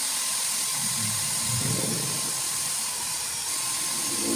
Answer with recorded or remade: remade